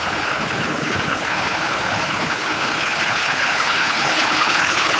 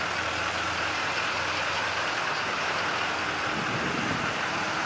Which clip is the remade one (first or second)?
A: first